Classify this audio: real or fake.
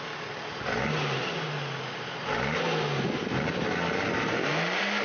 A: real